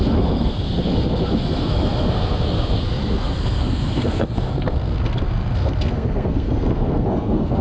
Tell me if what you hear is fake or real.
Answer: fake